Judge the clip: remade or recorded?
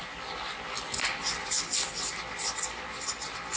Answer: recorded